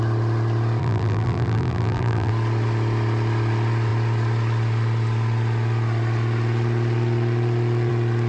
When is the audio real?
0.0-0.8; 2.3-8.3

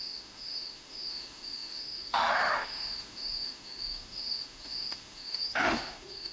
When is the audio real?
none

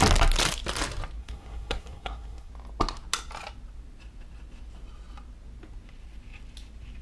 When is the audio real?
0.0-1.2; 2.5-7.0

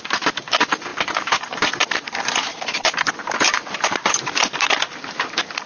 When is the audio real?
0.0-5.7

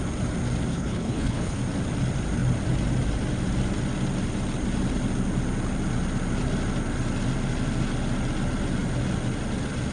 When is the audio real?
0.0-0.7; 1.6-9.9

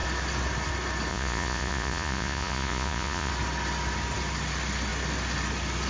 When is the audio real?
0.0-1.1; 3.3-5.9

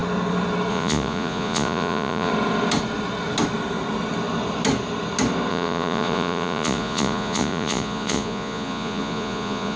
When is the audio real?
0.0-0.7; 2.3-5.5